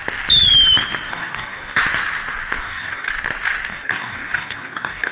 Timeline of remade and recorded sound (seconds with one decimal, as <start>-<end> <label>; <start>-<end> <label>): 0.0-1.1 recorded; 1.1-1.8 remade; 1.8-2.6 recorded; 2.6-3.1 remade; 3.1-3.7 recorded; 3.7-5.1 remade